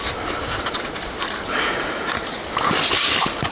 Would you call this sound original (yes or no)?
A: yes